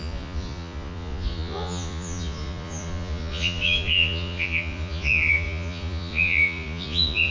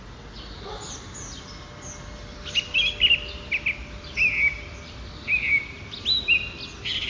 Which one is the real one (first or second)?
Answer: second